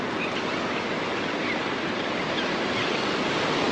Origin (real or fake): real